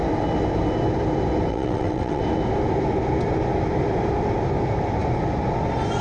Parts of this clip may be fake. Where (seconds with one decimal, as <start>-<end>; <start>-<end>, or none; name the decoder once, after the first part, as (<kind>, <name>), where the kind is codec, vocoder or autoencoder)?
1.5-2.2 (vocoder, WaveNeXt)